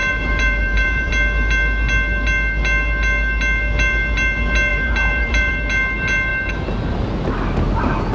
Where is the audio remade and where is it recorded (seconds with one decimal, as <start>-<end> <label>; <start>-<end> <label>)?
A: 0.0-1.1 remade; 1.1-4.7 recorded; 4.7-5.5 remade; 5.5-8.1 recorded

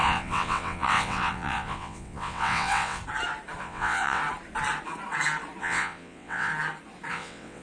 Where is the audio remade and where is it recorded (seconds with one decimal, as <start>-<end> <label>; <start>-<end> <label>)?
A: 0.0-3.0 remade; 3.0-3.6 recorded; 3.6-4.2 remade; 4.2-5.6 recorded; 5.6-6.5 remade; 6.5-7.1 recorded; 7.1-7.6 remade

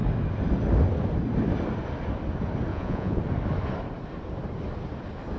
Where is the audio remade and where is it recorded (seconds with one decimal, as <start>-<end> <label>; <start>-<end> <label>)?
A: 0.0-2.7 recorded; 2.7-3.2 remade; 3.2-5.4 recorded

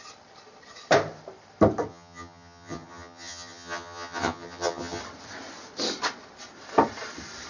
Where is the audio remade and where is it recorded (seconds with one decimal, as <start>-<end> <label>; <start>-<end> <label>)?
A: 0.0-1.9 recorded; 1.9-5.0 remade; 5.0-7.5 recorded

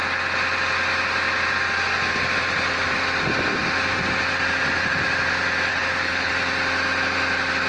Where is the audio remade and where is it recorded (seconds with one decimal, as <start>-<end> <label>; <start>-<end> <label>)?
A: 0.0-5.7 recorded; 5.7-6.3 remade; 6.3-7.7 recorded

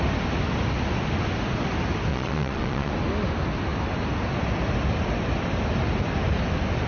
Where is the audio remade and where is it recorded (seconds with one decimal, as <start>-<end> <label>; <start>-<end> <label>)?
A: 0.0-2.1 recorded; 2.1-2.9 remade; 2.9-6.9 recorded

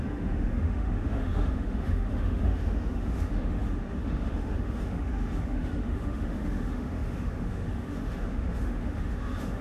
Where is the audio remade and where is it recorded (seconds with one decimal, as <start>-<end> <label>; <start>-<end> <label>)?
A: 0.0-9.6 remade

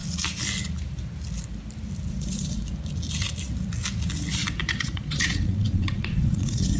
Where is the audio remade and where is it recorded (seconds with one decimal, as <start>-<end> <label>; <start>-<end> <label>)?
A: 0.0-2.1 recorded; 2.1-2.7 remade; 2.7-4.6 recorded; 4.6-6.8 remade